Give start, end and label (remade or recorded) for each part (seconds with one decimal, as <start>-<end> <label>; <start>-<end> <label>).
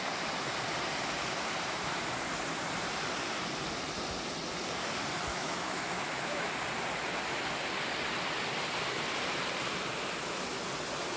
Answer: 0.0-5.3 recorded; 5.3-6.5 remade; 6.5-11.2 recorded